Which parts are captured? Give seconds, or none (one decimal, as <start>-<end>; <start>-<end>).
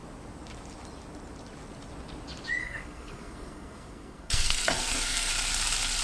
0.0-2.6; 5.3-6.0